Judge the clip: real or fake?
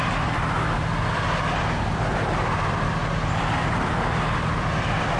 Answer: real